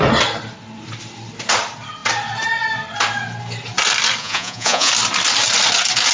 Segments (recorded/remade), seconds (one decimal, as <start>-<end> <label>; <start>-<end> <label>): 0.0-4.2 recorded; 4.2-4.9 remade; 4.9-6.1 recorded